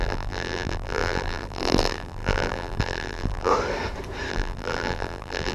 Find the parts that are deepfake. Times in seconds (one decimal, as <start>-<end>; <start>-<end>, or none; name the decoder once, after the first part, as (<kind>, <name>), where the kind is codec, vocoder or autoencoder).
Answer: 0.0-3.5 (vocoder, BigVGAN v2); 4.3-5.5